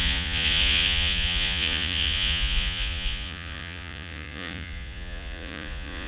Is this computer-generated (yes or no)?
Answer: yes